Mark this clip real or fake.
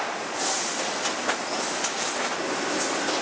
real